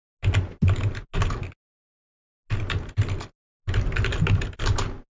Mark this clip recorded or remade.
recorded